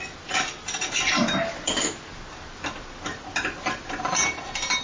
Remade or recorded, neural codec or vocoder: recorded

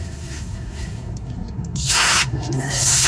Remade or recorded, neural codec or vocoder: remade, codec, SNAC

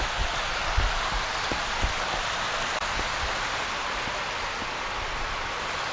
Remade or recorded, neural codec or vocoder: recorded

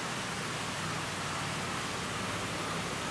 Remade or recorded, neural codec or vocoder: recorded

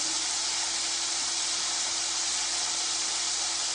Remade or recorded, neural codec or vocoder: recorded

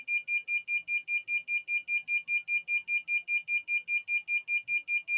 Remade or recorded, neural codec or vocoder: recorded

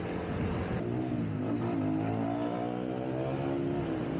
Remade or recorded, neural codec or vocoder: recorded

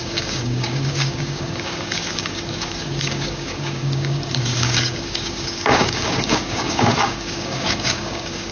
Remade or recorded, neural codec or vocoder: remade, codec, DAC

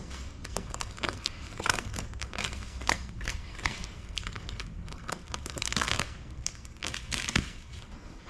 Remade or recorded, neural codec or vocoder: remade, codec, SNAC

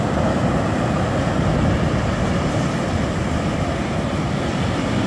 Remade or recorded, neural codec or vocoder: recorded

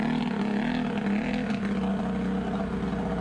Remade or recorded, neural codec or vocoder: recorded